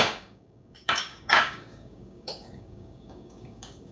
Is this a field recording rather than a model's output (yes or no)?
no